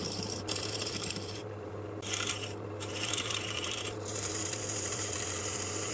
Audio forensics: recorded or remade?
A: remade